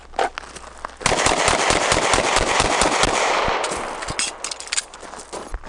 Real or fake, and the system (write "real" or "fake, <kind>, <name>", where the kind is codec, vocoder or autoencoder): real